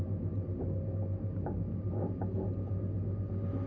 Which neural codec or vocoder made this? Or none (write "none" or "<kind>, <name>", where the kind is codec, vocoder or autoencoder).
none